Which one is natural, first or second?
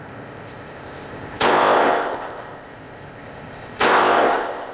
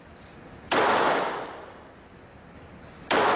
second